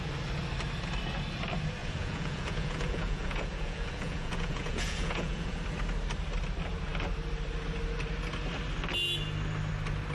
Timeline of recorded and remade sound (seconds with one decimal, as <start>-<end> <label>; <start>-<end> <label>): 0.0-1.8 recorded; 1.8-5.6 remade; 5.6-10.1 recorded